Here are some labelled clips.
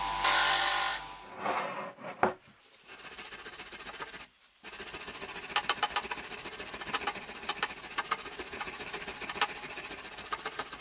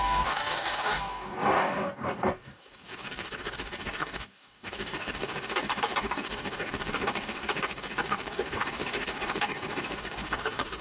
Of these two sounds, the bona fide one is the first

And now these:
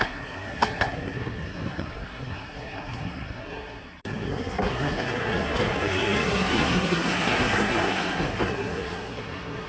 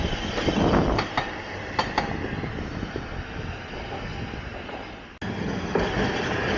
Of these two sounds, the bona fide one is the second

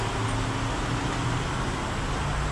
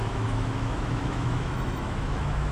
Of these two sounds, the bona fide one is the first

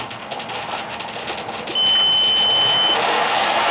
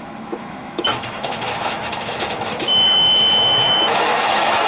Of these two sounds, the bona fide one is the first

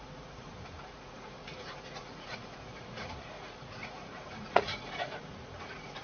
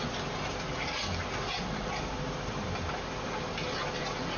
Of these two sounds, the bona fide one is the second